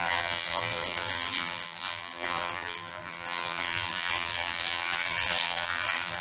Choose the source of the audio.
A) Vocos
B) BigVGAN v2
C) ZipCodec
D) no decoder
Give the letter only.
B